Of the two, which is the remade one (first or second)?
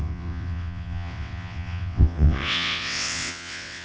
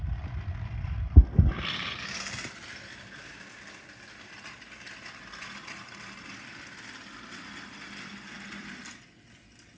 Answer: first